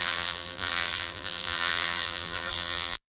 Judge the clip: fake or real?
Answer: fake